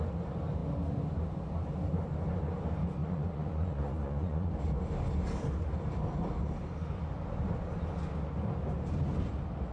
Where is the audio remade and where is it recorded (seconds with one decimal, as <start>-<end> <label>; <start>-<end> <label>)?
0.0-3.0 recorded; 3.0-4.5 remade; 4.5-9.7 recorded